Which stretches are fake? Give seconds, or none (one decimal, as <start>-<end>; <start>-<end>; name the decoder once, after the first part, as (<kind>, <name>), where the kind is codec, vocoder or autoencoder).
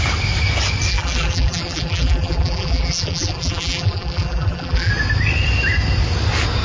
0.9-4.9 (vocoder, BigVGAN v2)